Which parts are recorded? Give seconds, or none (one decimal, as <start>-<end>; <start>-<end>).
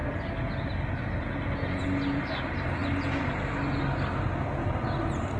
0.0-5.4